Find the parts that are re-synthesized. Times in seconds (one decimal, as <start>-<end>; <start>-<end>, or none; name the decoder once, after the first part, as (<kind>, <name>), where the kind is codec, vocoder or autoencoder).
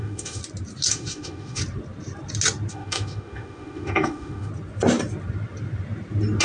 0.0-0.4 (autoencoder, DAC-VAE); 0.9-1.6; 2.7-4.5